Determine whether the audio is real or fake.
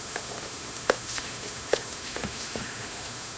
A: fake